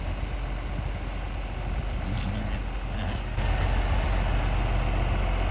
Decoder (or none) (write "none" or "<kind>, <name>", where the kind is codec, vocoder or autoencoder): none